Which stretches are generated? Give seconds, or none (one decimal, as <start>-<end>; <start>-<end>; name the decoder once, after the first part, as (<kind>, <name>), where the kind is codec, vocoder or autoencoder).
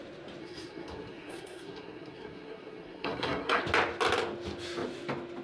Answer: 0.4-3.6 (codec, SNAC)